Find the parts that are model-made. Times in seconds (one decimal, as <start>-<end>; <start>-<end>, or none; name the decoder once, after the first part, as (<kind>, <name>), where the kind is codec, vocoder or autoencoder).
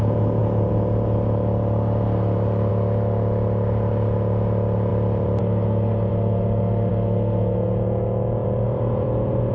4.9-5.4 (vocoder, BigVGAN v2); 6.1-6.9; 8.4-9.5